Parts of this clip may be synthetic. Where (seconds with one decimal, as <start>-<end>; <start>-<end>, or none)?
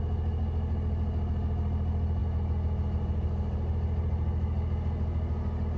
none